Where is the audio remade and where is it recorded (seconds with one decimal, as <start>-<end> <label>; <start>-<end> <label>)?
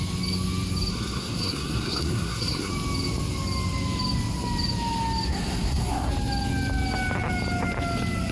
0.0-0.9 recorded; 0.9-2.7 remade; 2.7-5.3 recorded; 5.3-6.1 remade; 6.1-8.3 recorded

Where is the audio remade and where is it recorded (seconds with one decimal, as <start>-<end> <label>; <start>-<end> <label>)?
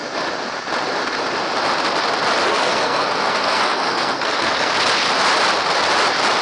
0.0-2.5 recorded; 2.5-4.7 remade; 4.7-6.4 recorded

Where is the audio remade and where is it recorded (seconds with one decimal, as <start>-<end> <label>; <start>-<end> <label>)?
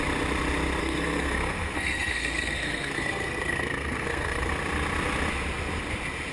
0.0-0.8 recorded; 0.8-4.5 remade; 4.5-6.3 recorded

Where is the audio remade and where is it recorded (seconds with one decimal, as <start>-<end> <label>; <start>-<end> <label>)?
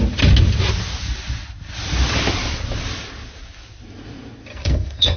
0.0-4.5 recorded; 4.5-5.2 remade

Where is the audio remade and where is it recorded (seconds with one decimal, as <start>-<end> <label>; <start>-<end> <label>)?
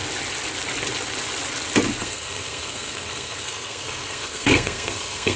0.0-2.0 recorded; 2.0-5.4 remade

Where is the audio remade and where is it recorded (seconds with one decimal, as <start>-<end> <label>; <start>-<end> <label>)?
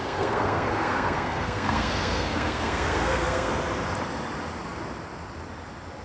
0.0-3.5 remade; 3.5-6.0 recorded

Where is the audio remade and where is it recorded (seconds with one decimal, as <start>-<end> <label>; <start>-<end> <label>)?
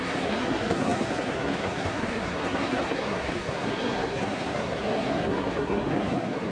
0.0-6.5 remade